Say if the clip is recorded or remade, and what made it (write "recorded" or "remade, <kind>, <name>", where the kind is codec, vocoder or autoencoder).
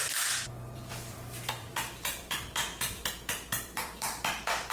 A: remade, vocoder, BigVGAN v2